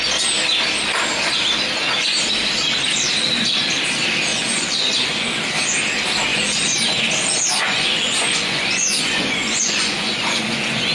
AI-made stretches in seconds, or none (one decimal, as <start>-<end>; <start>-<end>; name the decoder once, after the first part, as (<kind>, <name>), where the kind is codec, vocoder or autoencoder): 4.3-5.3 (vocoder, Vocos); 6.3-7.1; 7.5-10.9